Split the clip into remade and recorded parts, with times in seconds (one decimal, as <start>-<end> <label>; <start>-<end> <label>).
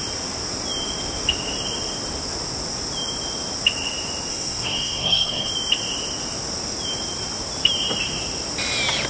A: 0.0-4.3 recorded; 4.3-5.5 remade; 5.5-9.1 recorded